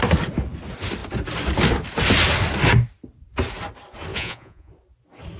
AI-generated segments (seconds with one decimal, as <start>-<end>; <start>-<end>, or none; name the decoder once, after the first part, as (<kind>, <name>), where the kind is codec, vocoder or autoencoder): 4.1-4.7 (vocoder, Vocos)